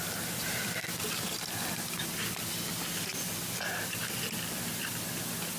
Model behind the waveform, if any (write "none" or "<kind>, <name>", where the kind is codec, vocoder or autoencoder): none